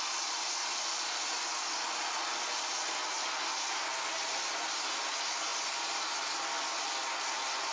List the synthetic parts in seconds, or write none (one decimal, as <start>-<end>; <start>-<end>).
none